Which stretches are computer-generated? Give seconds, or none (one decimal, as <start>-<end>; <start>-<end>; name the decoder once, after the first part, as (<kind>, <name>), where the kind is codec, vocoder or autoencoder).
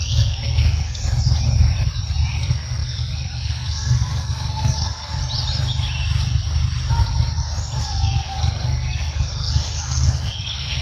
0.0-1.0 (codec, SNAC); 2.4-5.2; 7.8-10.8